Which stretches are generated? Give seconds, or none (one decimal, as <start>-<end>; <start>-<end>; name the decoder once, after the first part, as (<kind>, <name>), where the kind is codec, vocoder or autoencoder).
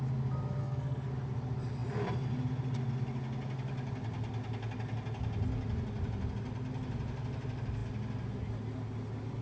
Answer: 0.6-1.1 (codec, SNAC)